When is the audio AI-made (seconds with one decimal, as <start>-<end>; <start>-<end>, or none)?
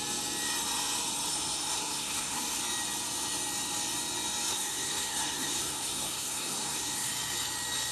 1.3-2.6; 4.5-7.1